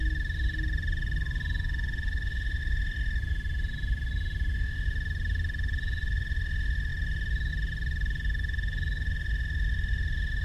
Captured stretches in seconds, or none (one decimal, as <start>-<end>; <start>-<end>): 0.0-10.4

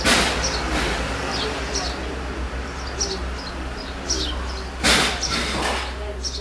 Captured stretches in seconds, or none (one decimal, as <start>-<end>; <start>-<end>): 0.0-6.4

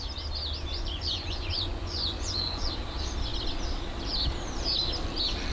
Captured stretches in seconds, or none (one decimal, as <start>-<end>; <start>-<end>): 0.0-0.7; 2.7-5.5